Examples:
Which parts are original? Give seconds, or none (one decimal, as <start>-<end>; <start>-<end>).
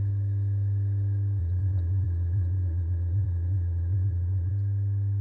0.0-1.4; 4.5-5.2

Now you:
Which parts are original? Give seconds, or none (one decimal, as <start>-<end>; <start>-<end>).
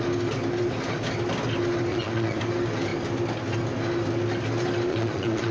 0.0-1.9; 2.4-4.9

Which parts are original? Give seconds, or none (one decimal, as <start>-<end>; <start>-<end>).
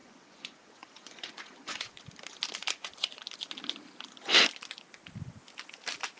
2.0-2.6; 3.2-6.2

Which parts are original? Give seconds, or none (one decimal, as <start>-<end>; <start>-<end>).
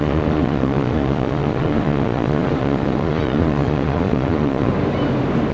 4.7-5.5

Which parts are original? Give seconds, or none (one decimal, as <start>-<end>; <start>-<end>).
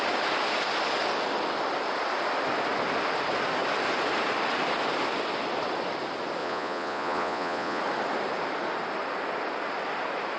0.0-6.4; 7.8-10.4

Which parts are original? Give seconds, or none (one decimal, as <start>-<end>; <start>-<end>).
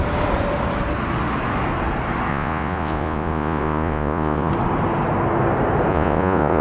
0.0-2.3; 4.5-5.9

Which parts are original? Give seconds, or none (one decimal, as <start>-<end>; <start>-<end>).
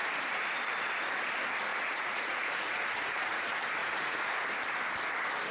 0.0-1.7; 3.4-3.8; 4.3-5.5